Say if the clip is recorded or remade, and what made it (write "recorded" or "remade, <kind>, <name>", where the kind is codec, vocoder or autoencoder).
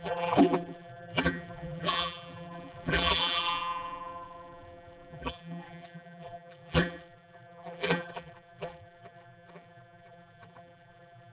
remade, vocoder, BigVGAN v2